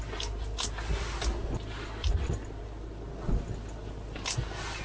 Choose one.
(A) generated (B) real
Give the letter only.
B